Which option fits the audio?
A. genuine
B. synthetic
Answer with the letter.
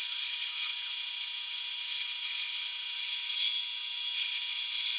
A